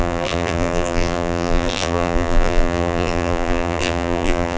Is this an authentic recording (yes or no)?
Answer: no